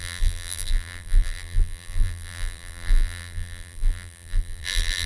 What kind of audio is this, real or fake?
fake